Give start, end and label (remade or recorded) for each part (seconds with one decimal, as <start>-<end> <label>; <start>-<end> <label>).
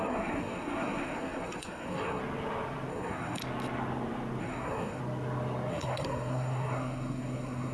0.0-2.2 remade; 2.2-2.9 recorded; 2.9-3.4 remade; 3.4-4.4 recorded; 4.4-5.0 remade; 5.0-5.7 recorded; 5.7-7.7 remade